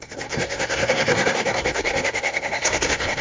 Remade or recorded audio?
remade